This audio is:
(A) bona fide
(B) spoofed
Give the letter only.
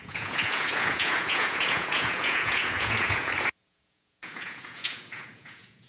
B